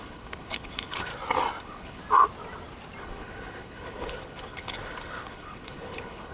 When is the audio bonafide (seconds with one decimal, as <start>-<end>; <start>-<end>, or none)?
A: 1.1-1.6; 2.0-3.0

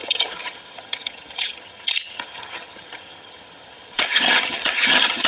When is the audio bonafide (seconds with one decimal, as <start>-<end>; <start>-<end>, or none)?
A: none